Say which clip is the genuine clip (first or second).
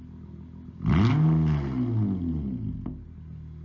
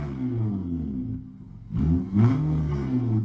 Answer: first